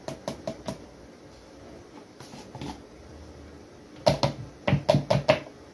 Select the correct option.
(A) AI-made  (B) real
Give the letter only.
B